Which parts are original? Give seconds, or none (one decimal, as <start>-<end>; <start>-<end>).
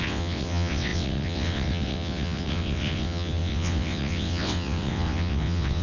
none